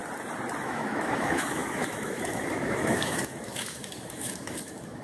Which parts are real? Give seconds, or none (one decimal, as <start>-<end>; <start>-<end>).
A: 0.0-0.6